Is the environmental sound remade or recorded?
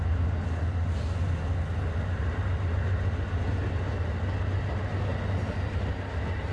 recorded